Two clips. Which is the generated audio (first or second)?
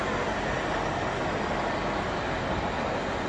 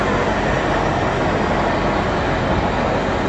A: first